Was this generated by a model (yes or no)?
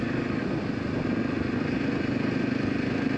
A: no